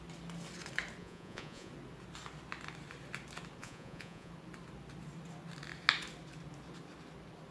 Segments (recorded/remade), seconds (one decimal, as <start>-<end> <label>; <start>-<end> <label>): 0.0-1.0 recorded; 1.0-1.7 remade; 1.7-3.6 recorded; 3.6-4.3 remade; 4.3-7.5 recorded